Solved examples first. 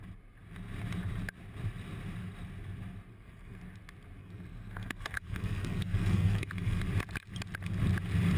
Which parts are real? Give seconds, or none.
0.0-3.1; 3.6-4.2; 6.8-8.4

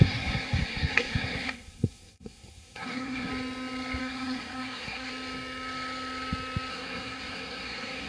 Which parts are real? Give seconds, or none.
3.3-4.0; 5.1-6.7